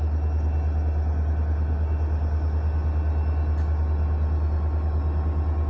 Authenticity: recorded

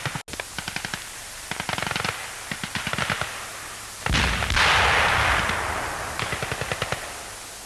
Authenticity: recorded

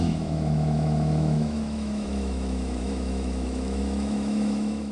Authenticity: remade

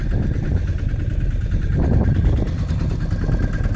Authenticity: recorded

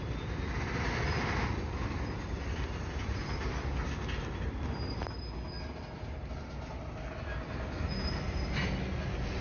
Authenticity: recorded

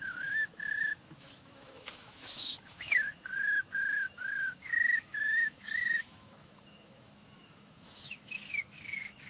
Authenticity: remade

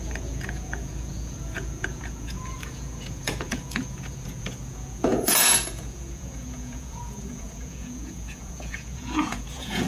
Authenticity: remade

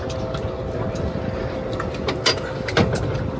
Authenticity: recorded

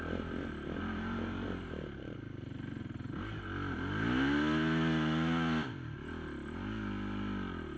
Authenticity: recorded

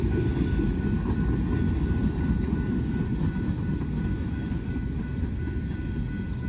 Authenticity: recorded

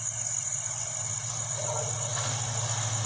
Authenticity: recorded